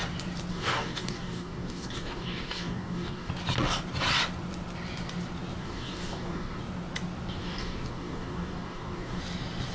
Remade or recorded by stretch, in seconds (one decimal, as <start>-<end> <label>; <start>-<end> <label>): 0.0-0.5 recorded; 0.5-3.3 remade; 3.3-5.6 recorded; 5.6-6.6 remade; 6.6-7.4 recorded; 7.4-9.2 remade; 9.2-9.7 recorded